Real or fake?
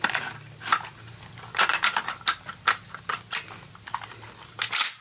real